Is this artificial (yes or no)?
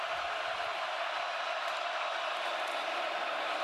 no